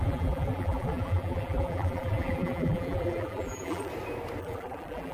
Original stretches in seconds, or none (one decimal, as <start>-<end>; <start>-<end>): 3.9-4.4